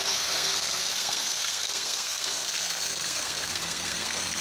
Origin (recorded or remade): remade